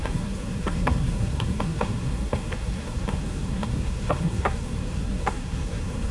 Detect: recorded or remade remade